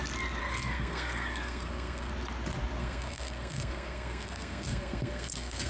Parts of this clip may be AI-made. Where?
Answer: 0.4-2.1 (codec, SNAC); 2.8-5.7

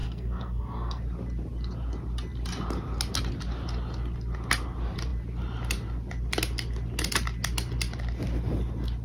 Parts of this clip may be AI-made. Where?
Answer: 0.0-1.0 (codec, SNAC)

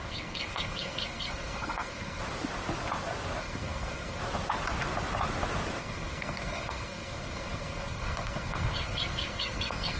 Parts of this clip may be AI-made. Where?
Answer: 0.0-2.2 (codec, SNAC); 3.4-4.2; 5.8-10.0

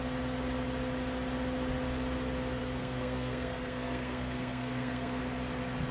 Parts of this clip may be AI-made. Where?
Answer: 2.6-5.2 (codec, SNAC)